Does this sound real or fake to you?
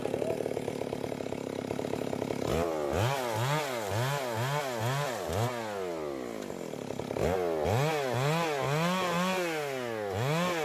real